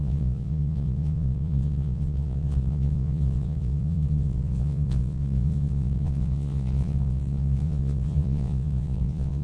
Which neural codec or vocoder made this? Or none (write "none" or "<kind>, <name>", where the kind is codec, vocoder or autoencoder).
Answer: vocoder, Vocos